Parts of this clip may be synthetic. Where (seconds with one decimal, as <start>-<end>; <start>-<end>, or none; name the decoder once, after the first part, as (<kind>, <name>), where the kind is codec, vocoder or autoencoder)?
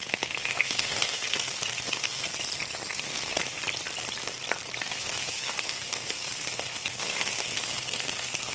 0.0-2.3 (codec, SNAC); 2.9-3.4; 4.8-8.5